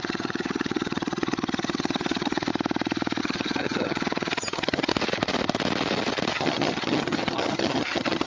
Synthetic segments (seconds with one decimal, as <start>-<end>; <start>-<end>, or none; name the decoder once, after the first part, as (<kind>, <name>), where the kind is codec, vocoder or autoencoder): 0.0-2.5 (vocoder, HiFi-GAN); 3.2-4.9; 6.3-8.3